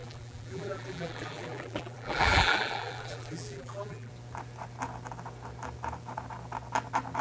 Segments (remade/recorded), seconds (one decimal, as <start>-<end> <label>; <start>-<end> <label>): 0.0-4.1 remade; 4.1-7.2 recorded